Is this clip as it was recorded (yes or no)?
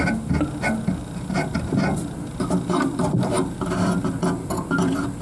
yes